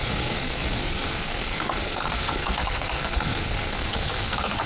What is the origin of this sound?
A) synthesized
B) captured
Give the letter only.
A